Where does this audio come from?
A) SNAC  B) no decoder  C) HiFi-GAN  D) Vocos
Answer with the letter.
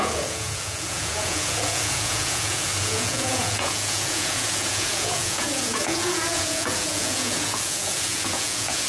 D